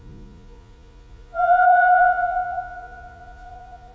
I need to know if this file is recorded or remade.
remade